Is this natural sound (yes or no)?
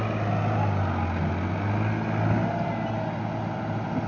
yes